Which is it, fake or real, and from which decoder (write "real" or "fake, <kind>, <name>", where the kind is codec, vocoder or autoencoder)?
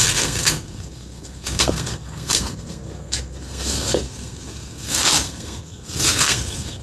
fake, codec, SNAC